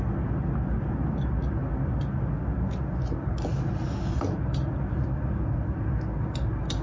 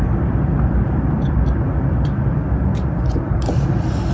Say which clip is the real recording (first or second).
first